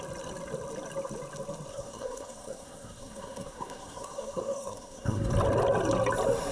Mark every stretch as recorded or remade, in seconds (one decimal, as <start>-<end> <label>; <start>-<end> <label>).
0.0-1.7 recorded; 1.7-5.3 remade; 5.3-6.5 recorded